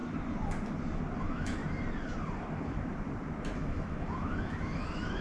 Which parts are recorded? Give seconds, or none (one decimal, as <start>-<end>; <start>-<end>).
0.0-1.2; 1.6-3.6

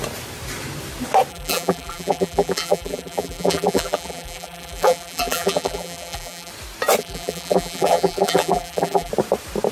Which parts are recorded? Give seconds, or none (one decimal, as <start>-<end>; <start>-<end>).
0.0-1.3; 6.5-7.0; 9.1-9.7